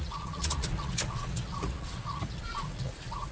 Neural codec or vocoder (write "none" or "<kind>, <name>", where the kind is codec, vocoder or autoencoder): vocoder, Vocos